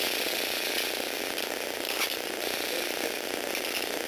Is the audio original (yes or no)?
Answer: yes